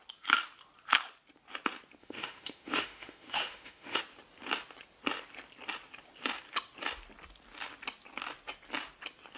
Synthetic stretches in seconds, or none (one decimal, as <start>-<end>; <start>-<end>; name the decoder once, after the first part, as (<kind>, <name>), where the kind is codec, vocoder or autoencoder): 2.0-4.0 (autoencoder, DAC-VAE)